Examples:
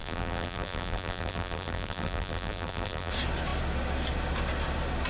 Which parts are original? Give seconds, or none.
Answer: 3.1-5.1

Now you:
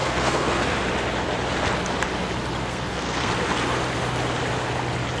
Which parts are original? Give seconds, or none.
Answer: 0.8-2.6; 3.3-5.2

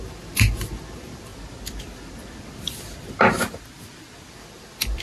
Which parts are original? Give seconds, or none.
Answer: 1.3-4.3

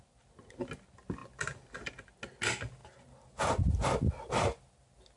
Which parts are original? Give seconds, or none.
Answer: 0.0-5.2

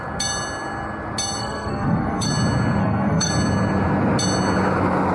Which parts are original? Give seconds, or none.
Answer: 0.0-1.4; 2.3-2.8; 3.3-5.1

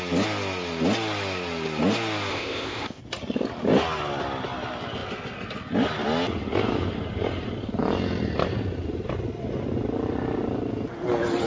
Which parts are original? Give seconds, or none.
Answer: 0.0-2.3; 3.0-11.5

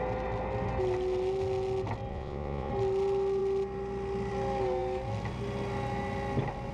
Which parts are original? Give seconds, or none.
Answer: 0.0-2.1; 2.7-6.7